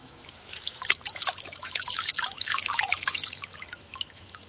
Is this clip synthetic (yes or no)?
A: yes